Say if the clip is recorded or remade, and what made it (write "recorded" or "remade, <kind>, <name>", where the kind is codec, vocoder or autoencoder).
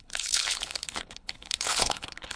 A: remade, codec, HILCodec